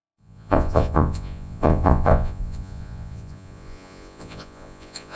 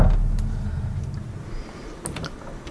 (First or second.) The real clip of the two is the second